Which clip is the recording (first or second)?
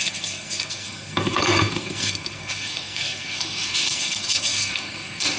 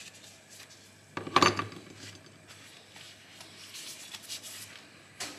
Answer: second